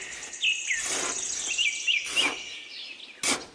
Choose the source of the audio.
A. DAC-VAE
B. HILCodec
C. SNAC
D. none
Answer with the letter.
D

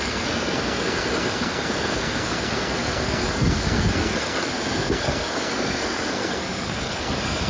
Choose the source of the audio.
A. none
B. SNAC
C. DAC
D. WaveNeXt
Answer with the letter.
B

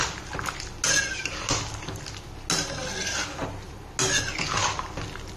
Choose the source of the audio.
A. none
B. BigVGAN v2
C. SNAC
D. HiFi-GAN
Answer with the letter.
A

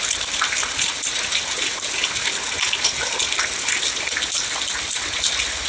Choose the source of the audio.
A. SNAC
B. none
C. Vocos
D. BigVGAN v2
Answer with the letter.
B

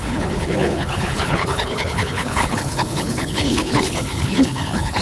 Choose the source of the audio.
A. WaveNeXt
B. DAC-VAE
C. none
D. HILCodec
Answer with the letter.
D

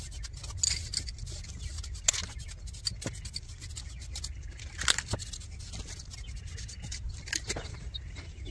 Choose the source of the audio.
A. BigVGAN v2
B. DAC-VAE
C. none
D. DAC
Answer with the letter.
C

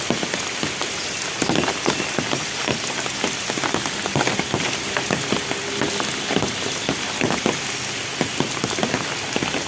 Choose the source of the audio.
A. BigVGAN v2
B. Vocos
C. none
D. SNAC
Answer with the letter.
C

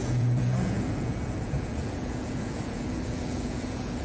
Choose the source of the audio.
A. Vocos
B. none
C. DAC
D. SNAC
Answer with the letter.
A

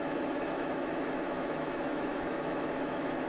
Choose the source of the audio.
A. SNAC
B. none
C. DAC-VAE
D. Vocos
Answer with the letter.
C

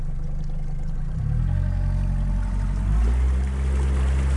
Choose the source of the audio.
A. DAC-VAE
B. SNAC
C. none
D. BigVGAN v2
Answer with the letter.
C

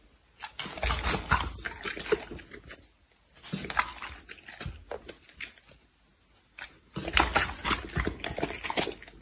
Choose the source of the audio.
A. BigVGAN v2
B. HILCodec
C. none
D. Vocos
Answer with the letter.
C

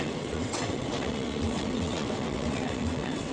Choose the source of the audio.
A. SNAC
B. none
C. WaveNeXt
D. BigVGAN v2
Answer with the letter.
C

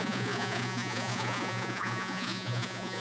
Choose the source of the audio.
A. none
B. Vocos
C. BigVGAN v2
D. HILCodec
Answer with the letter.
B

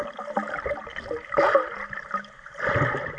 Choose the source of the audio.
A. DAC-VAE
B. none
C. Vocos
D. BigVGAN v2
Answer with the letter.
B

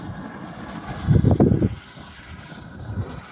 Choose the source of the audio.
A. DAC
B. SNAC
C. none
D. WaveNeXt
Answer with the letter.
C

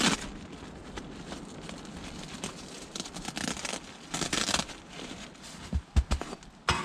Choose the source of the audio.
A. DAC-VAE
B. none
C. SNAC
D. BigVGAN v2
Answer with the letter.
B